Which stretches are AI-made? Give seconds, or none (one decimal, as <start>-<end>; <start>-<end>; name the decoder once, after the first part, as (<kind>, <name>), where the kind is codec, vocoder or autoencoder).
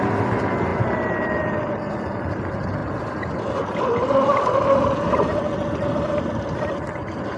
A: none